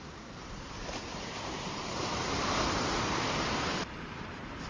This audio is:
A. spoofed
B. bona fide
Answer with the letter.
A